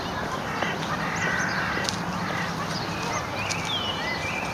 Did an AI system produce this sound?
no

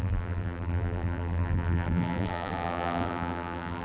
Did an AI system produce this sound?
yes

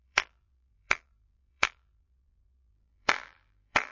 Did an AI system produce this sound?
yes